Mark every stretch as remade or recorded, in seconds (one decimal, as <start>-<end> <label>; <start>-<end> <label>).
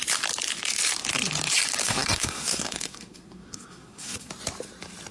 0.0-1.8 recorded; 1.8-4.3 remade; 4.3-5.1 recorded